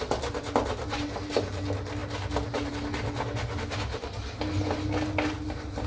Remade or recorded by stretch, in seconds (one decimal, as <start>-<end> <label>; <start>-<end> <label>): 0.0-5.9 recorded